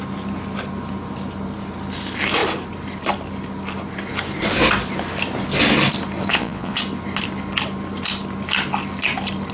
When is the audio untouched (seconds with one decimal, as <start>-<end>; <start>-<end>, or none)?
0.0-6.3; 6.8-9.5

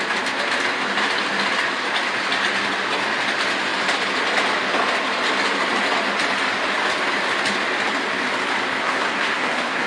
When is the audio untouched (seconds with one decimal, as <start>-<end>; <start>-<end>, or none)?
0.0-8.8

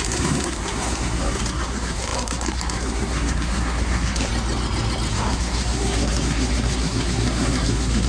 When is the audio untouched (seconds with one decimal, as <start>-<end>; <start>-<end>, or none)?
4.3-5.1